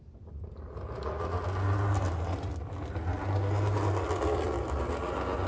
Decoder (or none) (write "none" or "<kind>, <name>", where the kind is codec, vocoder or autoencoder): none